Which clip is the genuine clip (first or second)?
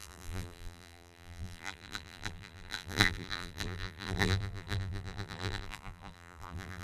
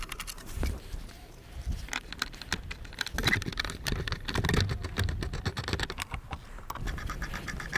second